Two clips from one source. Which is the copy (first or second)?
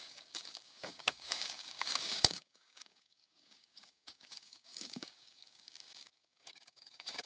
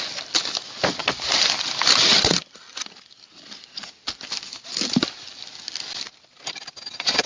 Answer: first